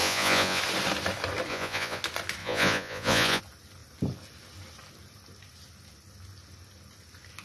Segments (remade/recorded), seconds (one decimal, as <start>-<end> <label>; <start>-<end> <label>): 0.0-0.6 remade; 0.6-1.5 recorded; 1.5-2.0 remade; 2.0-2.4 recorded; 2.4-3.4 remade; 3.4-7.4 recorded